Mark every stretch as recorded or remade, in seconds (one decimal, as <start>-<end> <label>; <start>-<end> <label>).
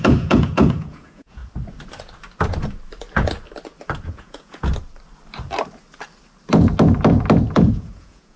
0.0-1.4 remade; 1.4-4.1 recorded; 4.1-4.7 remade; 4.7-7.5 recorded; 7.5-8.4 remade